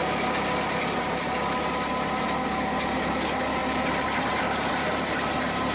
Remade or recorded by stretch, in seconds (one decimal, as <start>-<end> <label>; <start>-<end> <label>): 0.0-5.7 recorded